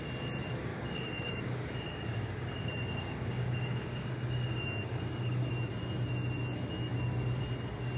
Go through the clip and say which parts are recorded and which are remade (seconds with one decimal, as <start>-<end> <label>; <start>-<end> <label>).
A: 0.0-0.7 recorded; 0.7-5.5 remade; 5.5-8.0 recorded